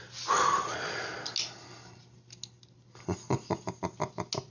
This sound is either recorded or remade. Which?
recorded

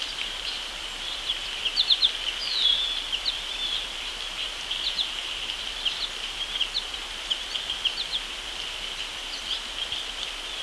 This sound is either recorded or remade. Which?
recorded